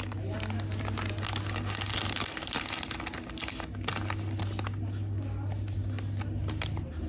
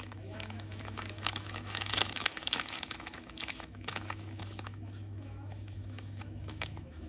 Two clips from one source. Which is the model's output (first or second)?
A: second